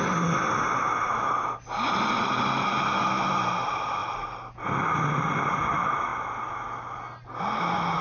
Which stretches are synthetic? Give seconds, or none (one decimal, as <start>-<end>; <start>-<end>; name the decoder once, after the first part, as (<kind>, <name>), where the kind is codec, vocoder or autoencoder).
none